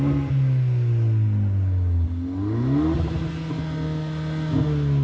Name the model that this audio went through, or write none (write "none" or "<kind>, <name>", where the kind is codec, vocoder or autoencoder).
none